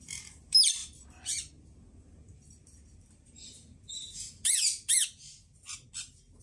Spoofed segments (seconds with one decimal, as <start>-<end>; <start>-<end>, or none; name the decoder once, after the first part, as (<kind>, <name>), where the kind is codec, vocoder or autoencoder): none